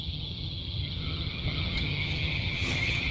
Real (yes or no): no